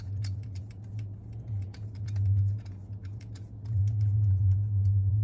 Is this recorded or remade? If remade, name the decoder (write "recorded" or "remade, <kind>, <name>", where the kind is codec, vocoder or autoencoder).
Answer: remade, vocoder, Vocos